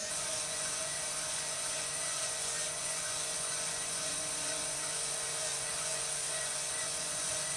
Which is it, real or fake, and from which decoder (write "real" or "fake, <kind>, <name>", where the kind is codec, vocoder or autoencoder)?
fake, vocoder, Vocos